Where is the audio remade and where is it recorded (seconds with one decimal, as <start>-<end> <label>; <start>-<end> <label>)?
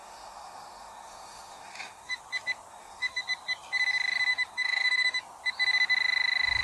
0.0-2.2 remade; 2.2-2.7 recorded; 2.7-3.2 remade; 3.2-4.3 recorded; 4.3-5.2 remade; 5.2-6.6 recorded